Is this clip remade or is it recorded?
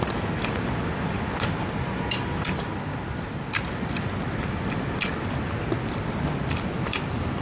recorded